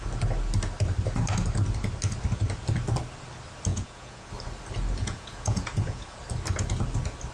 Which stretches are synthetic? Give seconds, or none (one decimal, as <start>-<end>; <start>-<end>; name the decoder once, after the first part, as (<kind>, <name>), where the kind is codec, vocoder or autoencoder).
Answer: 3.7-4.3 (vocoder, Vocos); 5.0-6.2